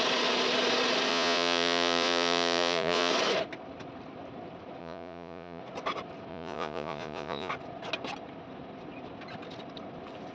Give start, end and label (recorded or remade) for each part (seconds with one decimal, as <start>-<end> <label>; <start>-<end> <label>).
0.0-1.1 recorded; 1.1-3.1 remade; 3.1-4.8 recorded; 4.8-5.6 remade; 5.6-6.3 recorded; 6.3-7.5 remade; 7.5-10.3 recorded